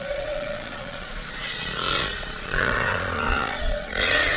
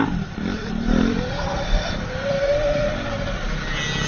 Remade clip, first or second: first